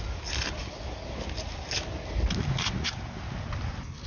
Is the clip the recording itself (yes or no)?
yes